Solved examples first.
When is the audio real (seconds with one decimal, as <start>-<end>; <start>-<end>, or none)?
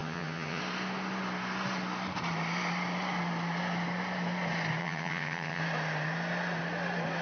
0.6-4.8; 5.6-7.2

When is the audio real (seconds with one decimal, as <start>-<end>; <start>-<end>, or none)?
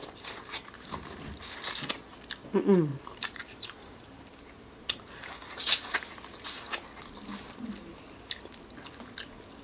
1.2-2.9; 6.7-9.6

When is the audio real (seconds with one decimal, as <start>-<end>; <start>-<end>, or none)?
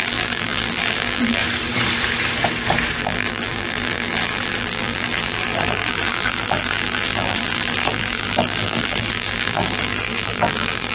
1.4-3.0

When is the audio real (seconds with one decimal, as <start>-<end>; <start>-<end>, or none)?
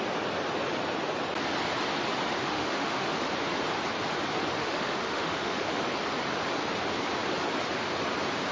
0.0-2.4; 3.3-4.6; 5.8-8.5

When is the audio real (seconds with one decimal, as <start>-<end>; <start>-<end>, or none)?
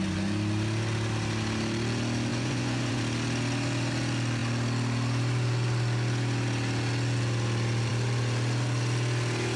0.0-2.3; 3.0-9.6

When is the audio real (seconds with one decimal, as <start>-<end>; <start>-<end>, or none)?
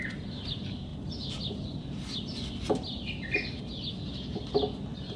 0.0-5.2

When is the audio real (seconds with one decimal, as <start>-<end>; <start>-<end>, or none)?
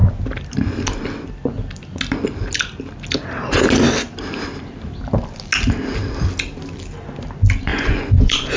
0.0-7.7